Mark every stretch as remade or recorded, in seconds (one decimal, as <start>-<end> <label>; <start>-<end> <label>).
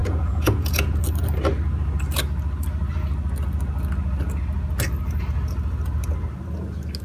0.0-1.0 remade; 1.0-7.0 recorded